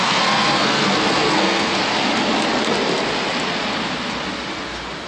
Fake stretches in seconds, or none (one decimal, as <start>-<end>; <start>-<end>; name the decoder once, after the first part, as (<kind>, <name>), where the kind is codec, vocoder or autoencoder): 0.0-1.8 (codec, SNAC)